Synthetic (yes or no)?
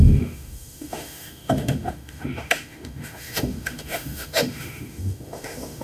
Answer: yes